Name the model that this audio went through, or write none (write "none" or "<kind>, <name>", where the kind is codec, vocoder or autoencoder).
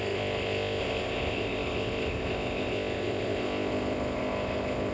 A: codec, ZipCodec